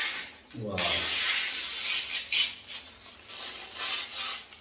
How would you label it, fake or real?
real